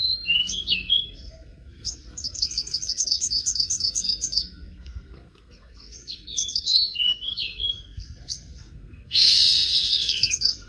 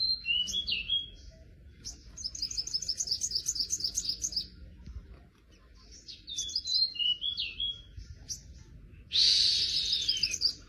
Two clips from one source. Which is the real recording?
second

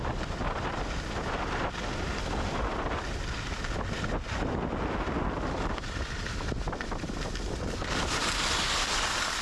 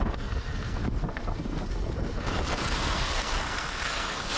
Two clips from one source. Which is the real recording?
first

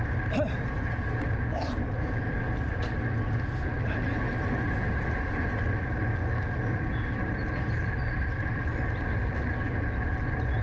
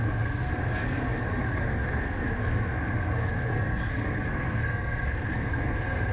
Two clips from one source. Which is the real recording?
first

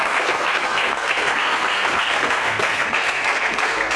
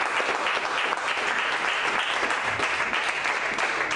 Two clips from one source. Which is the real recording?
second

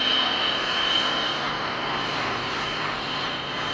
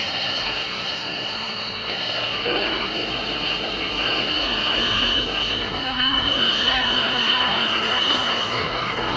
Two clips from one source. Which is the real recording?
first